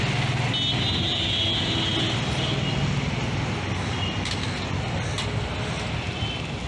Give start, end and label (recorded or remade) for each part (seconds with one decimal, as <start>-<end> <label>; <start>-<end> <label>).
0.0-6.7 recorded